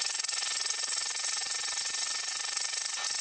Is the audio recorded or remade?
recorded